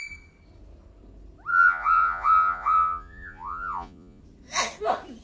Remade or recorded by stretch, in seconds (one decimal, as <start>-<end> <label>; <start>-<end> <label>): 0.0-1.5 recorded; 1.5-4.2 remade; 4.2-5.2 recorded